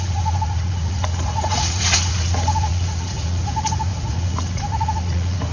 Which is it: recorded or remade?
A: remade